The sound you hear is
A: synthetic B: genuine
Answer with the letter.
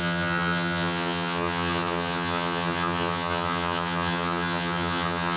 A